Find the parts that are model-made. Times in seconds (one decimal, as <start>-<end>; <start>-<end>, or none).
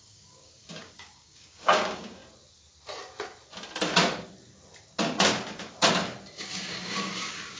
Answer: 0.0-2.2; 6.4-7.6